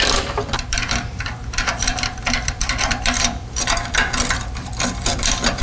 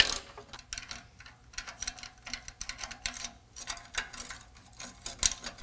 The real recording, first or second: second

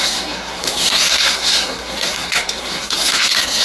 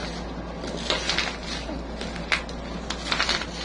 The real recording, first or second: second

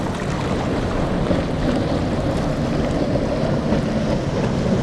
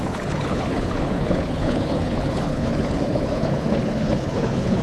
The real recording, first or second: first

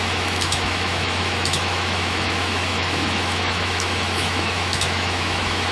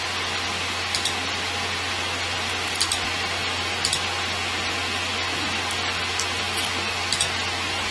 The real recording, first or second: second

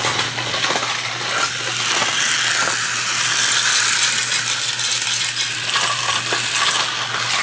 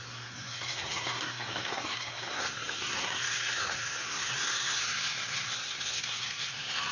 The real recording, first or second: first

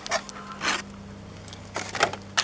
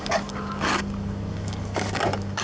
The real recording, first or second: first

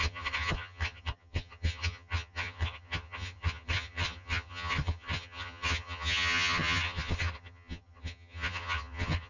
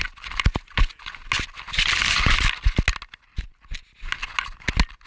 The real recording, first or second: second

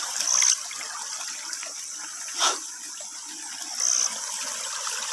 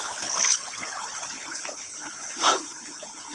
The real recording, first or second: first